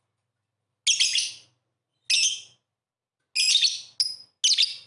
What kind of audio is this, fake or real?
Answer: real